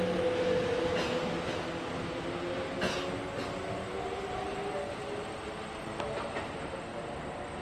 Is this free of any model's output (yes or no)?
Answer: yes